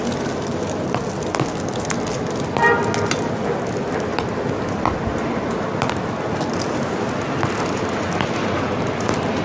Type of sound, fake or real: real